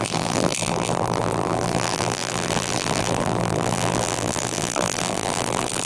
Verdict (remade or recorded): remade